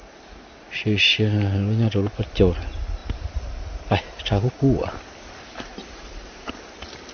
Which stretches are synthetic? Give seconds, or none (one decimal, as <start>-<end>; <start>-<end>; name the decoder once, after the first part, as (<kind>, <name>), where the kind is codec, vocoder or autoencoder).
3.0-4.6 (vocoder, BigVGAN v2); 5.8-6.5